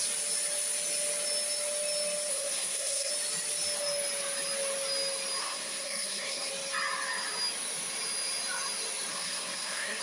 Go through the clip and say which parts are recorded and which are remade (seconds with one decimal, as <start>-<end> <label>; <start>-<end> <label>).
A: 0.0-2.3 recorded; 2.3-3.1 remade; 3.1-5.4 recorded; 5.4-6.5 remade; 6.5-9.1 recorded; 9.1-10.0 remade